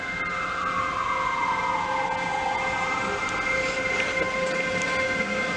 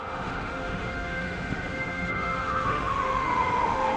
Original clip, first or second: first